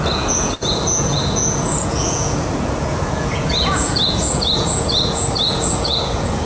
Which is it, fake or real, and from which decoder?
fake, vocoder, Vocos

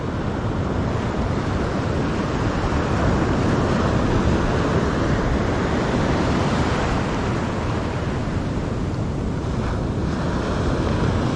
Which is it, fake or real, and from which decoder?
real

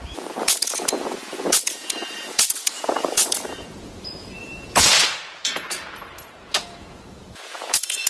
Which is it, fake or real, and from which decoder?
fake, vocoder, Vocos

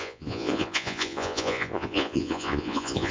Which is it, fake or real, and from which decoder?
fake, vocoder, Vocos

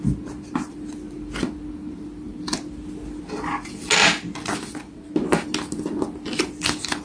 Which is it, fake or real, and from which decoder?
real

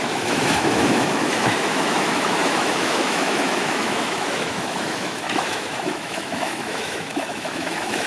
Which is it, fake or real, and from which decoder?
fake, autoencoder, DAC-VAE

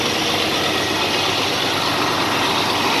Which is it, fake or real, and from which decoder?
real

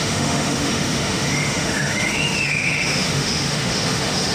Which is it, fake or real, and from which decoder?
fake, autoencoder, DAC-VAE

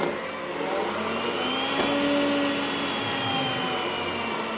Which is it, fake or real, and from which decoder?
real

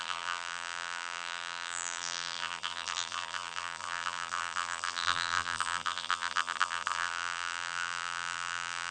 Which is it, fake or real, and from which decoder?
fake, vocoder, BigVGAN v2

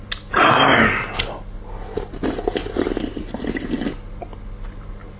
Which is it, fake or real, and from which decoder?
real